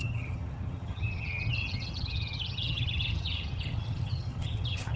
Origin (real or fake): fake